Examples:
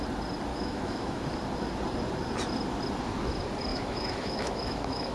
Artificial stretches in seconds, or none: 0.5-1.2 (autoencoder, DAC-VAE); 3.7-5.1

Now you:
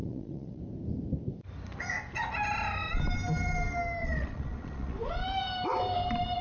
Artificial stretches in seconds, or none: 0.0-0.6 (vocoder, Vocos); 4.0-5.1

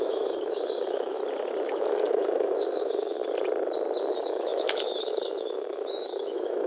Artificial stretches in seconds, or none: 0.0-1.2 (autoencoder, DAC-VAE); 1.8-3.2; 4.1-6.7

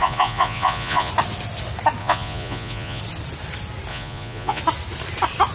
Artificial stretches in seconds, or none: 0.0-1.1 (vocoder, Vocos); 2.0-3.0; 3.9-4.6

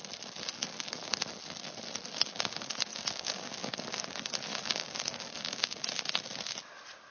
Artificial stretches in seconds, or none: 2.9-4.0 (codec, DAC); 4.5-5.7